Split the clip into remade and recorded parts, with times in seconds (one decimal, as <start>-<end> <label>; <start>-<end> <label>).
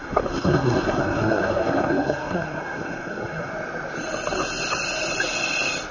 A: 0.0-3.5 remade; 3.5-5.9 recorded